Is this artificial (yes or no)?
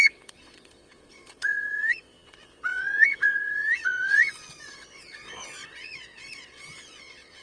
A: yes